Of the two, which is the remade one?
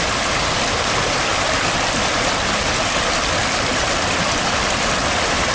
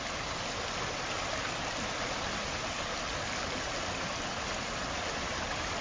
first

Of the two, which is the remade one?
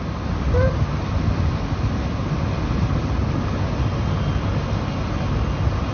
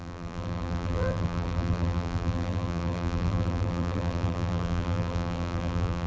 second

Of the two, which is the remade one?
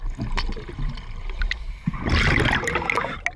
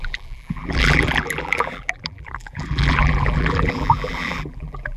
second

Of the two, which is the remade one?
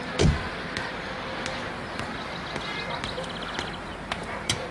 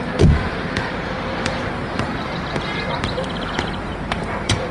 second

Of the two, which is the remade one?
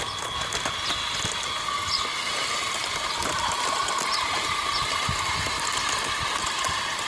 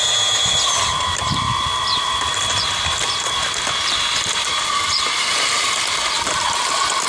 second